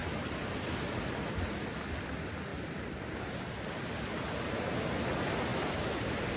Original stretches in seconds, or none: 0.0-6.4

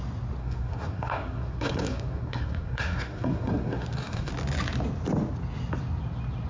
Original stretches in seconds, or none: 0.0-0.4; 4.3-6.5